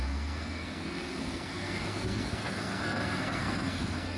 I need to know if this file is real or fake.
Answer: fake